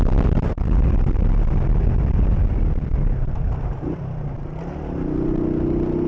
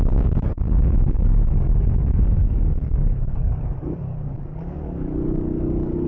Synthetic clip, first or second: second